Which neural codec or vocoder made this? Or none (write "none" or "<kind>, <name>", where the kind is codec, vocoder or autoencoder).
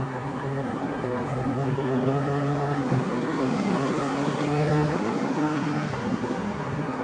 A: codec, SNAC